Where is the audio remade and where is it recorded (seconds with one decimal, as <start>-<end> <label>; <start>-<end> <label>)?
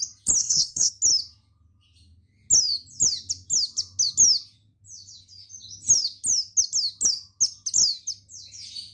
0.0-0.4 recorded; 0.4-0.9 remade; 0.9-8.9 recorded